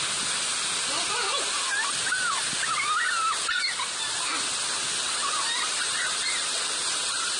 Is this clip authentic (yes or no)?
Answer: yes